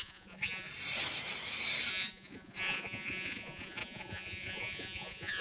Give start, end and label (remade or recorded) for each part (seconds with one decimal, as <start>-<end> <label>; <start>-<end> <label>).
0.0-0.7 remade; 0.7-1.9 recorded; 1.9-5.4 remade